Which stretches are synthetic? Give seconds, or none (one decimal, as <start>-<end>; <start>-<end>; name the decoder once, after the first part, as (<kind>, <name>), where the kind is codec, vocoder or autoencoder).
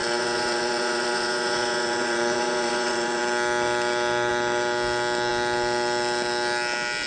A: 0.0-3.2 (vocoder, Vocos)